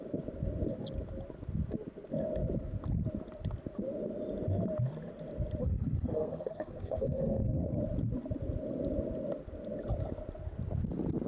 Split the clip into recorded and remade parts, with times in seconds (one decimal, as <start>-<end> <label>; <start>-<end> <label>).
0.0-5.6 recorded; 5.6-7.8 remade; 7.8-11.3 recorded